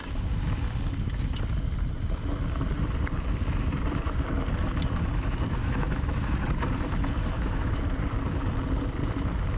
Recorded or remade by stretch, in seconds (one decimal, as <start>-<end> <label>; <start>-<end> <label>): 0.0-5.6 recorded; 5.6-6.3 remade; 6.3-7.2 recorded; 7.2-7.8 remade; 7.8-9.6 recorded